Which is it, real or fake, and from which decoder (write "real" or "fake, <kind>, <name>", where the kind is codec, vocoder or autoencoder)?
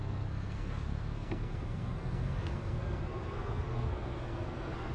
fake, codec, SNAC